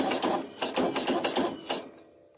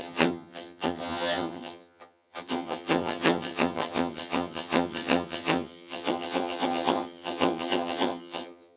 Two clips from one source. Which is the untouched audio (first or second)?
first